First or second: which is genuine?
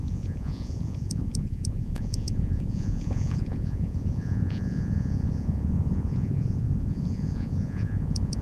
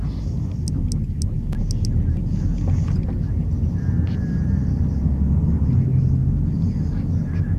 second